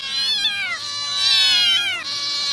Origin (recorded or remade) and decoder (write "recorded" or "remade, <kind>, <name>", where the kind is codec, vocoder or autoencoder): recorded